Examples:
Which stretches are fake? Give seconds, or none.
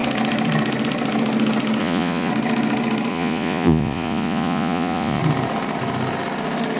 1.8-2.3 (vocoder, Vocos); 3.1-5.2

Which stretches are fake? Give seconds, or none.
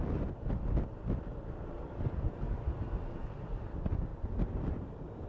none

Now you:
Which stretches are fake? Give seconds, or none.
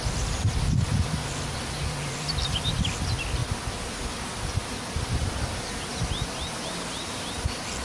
none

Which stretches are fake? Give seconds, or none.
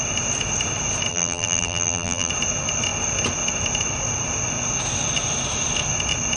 1.1-2.3 (vocoder, BigVGAN v2)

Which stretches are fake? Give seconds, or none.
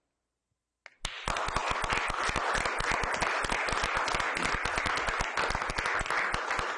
none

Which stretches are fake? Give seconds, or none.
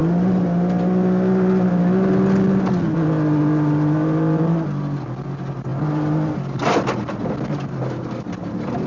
none